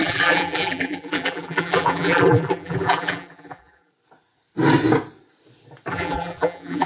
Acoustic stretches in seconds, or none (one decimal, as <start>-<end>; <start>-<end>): 3.9-5.9